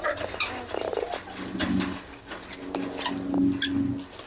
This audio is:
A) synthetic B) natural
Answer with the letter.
B